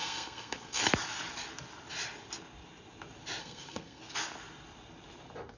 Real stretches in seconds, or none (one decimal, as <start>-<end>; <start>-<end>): 0.8-3.4; 4.0-5.6